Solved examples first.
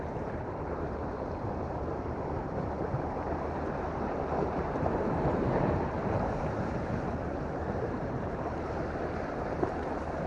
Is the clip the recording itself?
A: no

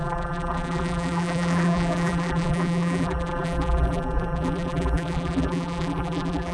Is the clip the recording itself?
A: no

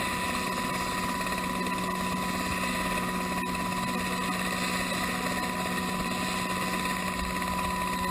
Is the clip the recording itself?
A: yes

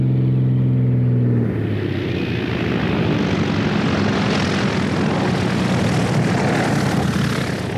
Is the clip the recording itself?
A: yes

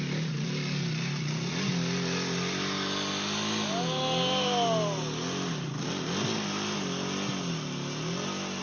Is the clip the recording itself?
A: yes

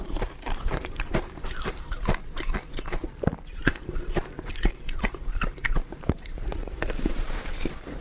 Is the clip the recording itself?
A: no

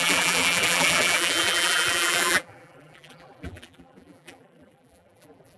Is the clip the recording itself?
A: no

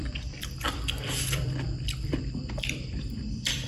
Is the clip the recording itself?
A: no